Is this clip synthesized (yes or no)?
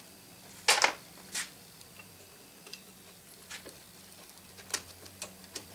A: no